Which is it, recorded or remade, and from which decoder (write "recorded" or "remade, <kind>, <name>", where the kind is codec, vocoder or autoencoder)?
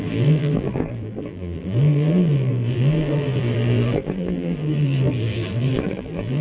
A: remade, vocoder, BigVGAN v2